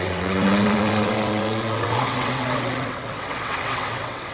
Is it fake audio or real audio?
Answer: fake